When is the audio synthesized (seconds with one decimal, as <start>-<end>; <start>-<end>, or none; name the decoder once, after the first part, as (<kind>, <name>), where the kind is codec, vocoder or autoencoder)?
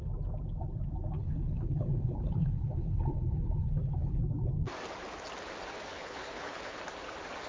1.2-4.2 (codec, HILCodec); 5.9-6.8